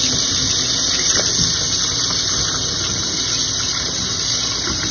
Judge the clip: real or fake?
real